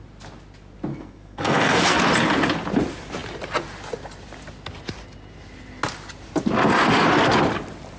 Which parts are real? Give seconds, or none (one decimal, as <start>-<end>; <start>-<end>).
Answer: 0.0-0.9; 2.0-8.0